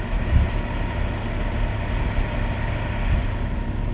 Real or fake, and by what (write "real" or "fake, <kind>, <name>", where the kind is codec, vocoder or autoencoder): real